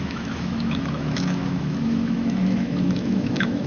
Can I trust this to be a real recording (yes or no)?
no